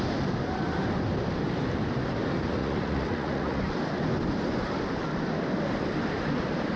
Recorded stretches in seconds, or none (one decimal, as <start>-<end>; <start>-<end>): 0.0-2.6; 3.6-6.8